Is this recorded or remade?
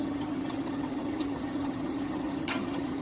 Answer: remade